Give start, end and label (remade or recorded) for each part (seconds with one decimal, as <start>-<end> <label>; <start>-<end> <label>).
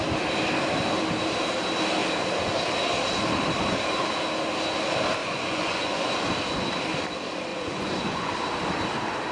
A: 0.0-5.2 recorded; 5.2-6.2 remade; 6.2-7.5 recorded; 7.5-8.3 remade; 8.3-9.3 recorded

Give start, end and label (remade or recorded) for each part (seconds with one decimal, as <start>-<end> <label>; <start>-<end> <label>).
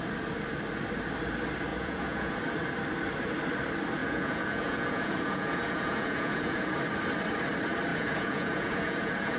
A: 0.0-1.7 recorded; 1.7-2.4 remade; 2.4-4.0 recorded; 4.0-6.8 remade; 6.8-7.9 recorded; 7.9-9.4 remade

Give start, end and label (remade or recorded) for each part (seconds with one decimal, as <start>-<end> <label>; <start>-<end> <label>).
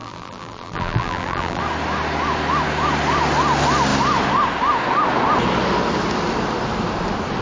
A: 0.0-1.6 remade; 1.6-7.4 recorded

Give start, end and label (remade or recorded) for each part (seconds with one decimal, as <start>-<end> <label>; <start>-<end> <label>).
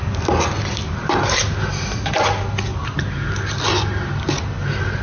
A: 0.0-5.0 recorded